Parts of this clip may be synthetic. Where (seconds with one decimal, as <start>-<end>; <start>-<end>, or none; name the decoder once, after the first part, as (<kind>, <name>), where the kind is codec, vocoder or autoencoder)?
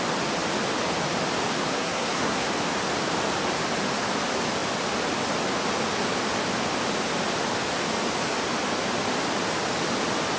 1.6-2.5 (codec, SNAC)